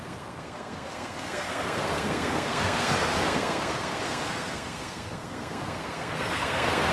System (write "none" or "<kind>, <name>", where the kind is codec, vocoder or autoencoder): codec, SNAC